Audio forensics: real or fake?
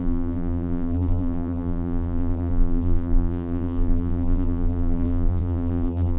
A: fake